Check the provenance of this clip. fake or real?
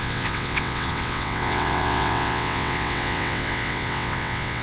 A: fake